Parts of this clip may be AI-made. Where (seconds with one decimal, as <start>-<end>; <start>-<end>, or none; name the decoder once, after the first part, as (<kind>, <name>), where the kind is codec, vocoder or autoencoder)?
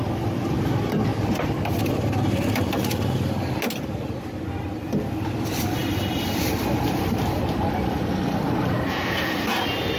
none